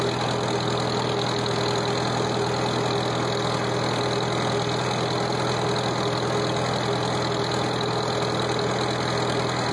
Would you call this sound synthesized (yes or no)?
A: no